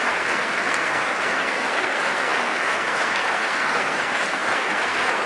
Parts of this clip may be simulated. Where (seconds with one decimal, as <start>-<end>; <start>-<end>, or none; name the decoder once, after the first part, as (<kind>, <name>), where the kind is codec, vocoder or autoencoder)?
0.0-5.3 (codec, SNAC)